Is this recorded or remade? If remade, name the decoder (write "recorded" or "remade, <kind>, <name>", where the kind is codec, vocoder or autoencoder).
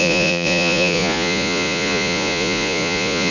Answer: remade, vocoder, Vocos